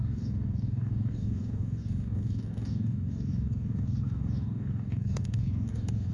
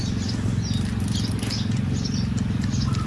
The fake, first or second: first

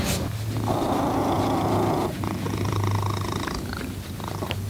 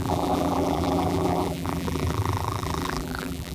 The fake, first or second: second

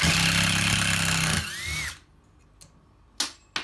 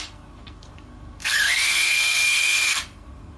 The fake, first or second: second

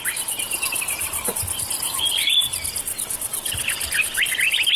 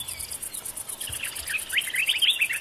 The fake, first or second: first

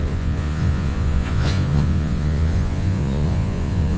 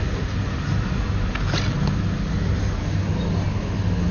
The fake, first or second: first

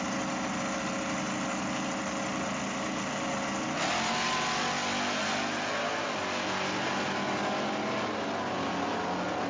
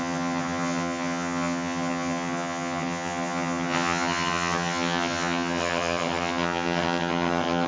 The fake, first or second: second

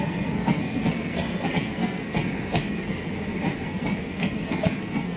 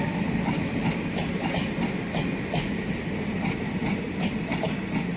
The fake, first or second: first